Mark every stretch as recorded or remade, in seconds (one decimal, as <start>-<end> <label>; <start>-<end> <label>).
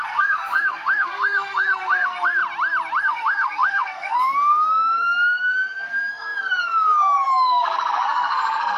0.0-2.4 remade; 2.4-3.0 recorded; 3.0-8.8 remade